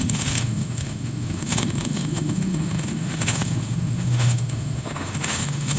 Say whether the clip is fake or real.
fake